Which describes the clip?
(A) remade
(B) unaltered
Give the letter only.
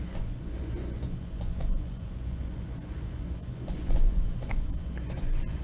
A